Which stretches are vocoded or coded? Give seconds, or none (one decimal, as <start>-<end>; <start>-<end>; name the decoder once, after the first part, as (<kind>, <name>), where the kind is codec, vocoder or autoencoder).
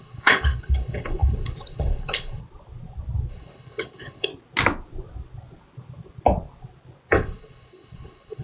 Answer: 0.0-2.4 (codec, HILCodec); 3.3-4.3; 7.1-8.4